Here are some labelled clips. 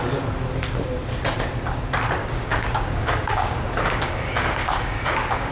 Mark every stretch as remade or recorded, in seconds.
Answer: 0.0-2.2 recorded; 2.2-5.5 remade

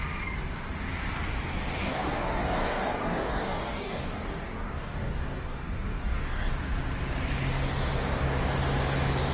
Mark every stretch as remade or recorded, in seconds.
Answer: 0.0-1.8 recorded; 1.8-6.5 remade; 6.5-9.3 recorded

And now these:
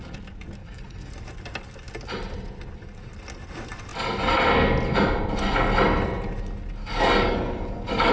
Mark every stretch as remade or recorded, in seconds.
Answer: 0.0-0.6 recorded; 0.6-1.1 remade; 1.1-6.8 recorded; 6.8-8.1 remade

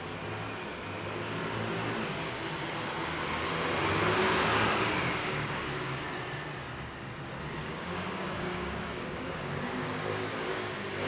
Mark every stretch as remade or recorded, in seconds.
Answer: 0.0-5.2 recorded; 5.2-6.0 remade; 6.0-7.6 recorded; 7.6-11.1 remade

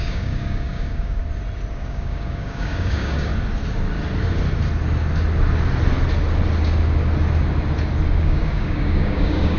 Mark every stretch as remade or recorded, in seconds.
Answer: 0.0-1.2 remade; 1.2-1.7 recorded; 1.7-3.3 remade; 3.3-8.1 recorded; 8.1-9.6 remade

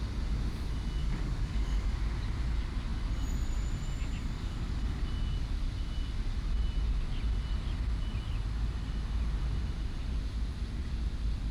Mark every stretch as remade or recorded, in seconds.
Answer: 0.0-1.0 recorded; 1.0-2.0 remade; 2.0-4.2 recorded; 4.2-5.0 remade; 5.0-11.5 recorded